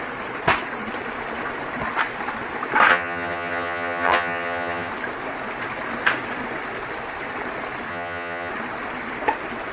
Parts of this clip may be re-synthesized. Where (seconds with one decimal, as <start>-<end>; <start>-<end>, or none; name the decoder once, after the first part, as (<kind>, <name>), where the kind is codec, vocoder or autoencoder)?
2.9-4.9 (vocoder, HiFi-GAN); 7.9-8.5